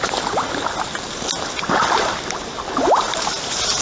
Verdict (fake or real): real